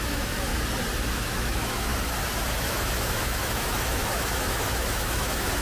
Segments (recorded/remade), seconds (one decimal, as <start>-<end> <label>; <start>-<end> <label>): 0.0-0.5 remade; 0.5-1.1 recorded; 1.1-1.9 remade; 1.9-2.5 recorded; 2.5-5.6 remade